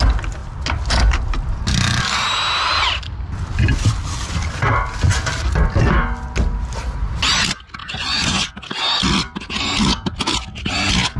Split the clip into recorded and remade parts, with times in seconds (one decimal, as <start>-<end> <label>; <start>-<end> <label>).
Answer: 0.0-7.8 recorded; 7.8-8.5 remade; 8.5-11.2 recorded